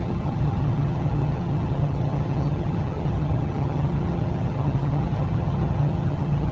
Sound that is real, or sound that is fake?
fake